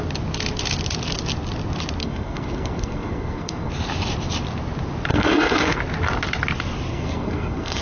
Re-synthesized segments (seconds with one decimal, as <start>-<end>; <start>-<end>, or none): 2.0-3.7; 5.1-5.8; 6.9-7.8